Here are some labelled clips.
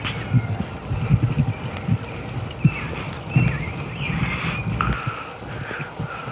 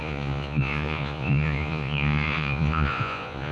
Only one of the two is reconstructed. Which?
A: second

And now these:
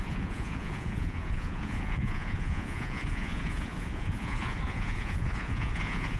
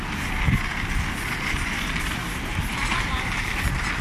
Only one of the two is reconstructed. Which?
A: first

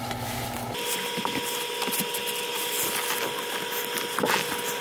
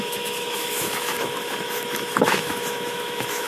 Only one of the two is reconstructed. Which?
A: second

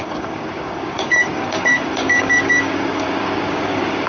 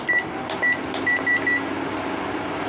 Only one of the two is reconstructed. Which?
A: first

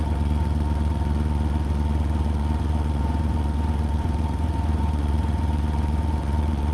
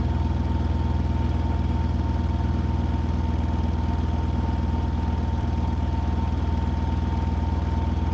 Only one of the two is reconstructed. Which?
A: first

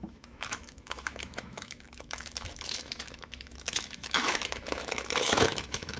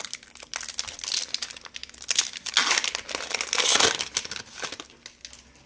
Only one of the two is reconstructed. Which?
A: first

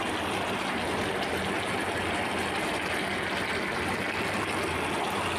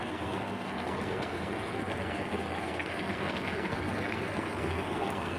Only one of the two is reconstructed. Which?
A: second